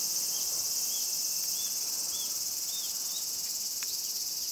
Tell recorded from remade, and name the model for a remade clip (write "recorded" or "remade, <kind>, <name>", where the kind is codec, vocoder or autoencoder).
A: recorded